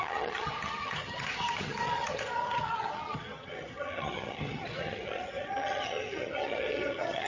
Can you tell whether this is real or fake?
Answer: fake